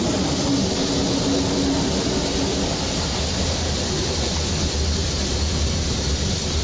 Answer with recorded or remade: recorded